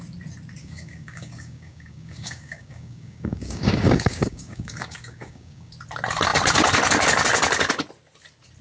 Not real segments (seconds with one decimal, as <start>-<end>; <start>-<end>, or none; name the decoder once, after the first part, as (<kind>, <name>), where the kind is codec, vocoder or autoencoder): 0.6-5.7 (codec, DAC)